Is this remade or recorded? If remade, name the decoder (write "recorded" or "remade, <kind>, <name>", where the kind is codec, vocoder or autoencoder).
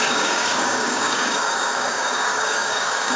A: remade, codec, DAC